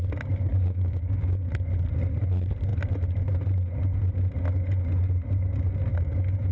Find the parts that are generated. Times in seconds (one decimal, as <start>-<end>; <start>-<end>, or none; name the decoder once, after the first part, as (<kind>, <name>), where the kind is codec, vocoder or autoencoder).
0.5-1.5 (codec, DAC)